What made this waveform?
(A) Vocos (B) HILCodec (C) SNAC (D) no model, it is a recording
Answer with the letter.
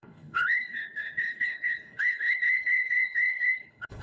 B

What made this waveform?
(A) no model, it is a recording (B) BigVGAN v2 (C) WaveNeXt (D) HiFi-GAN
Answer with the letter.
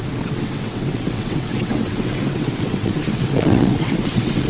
C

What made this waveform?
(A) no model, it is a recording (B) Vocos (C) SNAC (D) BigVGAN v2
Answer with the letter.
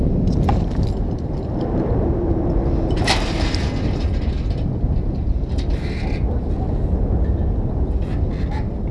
A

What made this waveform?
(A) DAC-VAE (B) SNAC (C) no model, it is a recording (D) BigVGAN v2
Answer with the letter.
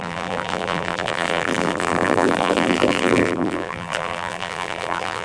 D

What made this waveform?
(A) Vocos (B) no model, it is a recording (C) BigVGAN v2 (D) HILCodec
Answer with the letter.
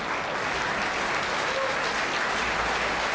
B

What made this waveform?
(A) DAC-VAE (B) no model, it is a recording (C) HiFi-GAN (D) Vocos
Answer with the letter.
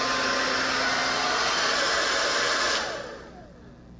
B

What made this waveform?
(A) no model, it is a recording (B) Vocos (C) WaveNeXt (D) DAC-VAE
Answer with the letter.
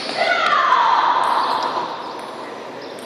A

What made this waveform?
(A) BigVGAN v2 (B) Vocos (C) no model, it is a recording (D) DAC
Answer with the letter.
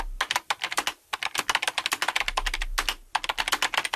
C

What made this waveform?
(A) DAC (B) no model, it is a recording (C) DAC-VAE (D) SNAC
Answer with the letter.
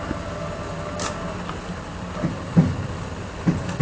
B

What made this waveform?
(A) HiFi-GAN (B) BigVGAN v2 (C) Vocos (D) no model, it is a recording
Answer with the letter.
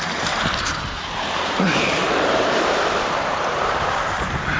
B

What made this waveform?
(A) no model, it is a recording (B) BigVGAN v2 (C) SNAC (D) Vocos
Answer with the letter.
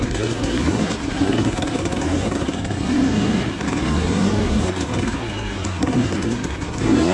C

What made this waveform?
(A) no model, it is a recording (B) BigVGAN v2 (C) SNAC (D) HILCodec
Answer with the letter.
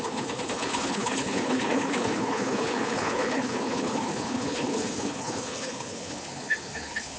D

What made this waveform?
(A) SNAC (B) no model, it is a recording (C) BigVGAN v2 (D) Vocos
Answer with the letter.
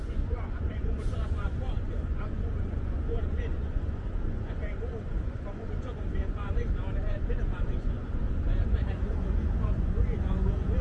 D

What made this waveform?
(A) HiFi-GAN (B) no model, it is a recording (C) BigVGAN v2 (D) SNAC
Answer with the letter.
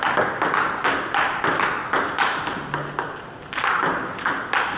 B